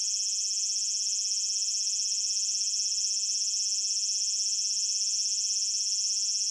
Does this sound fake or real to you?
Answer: real